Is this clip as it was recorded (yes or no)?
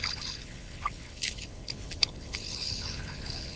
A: no